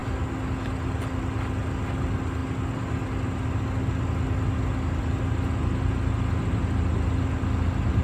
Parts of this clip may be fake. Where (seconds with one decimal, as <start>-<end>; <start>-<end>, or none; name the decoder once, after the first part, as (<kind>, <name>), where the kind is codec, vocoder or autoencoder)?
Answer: none